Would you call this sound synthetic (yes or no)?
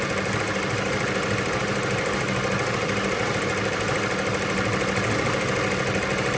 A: no